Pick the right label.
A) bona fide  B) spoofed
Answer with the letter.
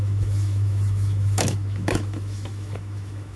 B